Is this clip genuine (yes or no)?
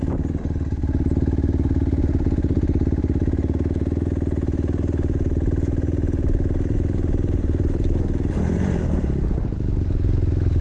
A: yes